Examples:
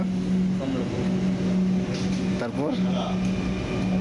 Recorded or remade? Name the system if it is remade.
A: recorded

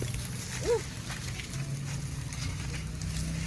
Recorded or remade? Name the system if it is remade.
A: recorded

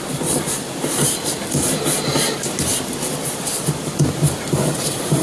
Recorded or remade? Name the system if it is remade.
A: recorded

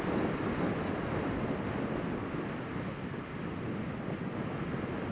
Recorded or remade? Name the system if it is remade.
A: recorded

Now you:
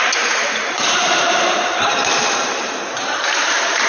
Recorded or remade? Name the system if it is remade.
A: remade, vocoder, BigVGAN v2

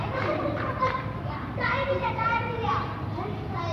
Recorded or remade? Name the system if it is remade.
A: remade, vocoder, BigVGAN v2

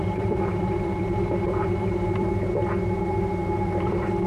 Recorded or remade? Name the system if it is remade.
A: remade, vocoder, BigVGAN v2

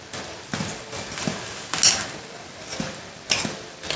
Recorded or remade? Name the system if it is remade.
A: recorded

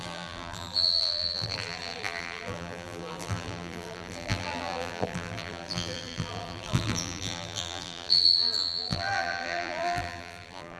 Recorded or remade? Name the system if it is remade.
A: remade, vocoder, BigVGAN v2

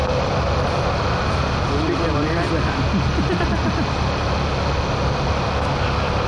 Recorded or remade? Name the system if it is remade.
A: recorded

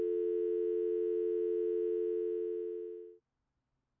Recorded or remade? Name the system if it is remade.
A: recorded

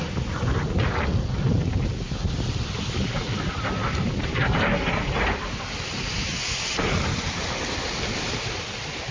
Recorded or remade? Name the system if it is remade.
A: recorded